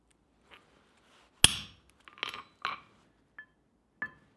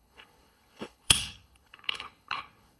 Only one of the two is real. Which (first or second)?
first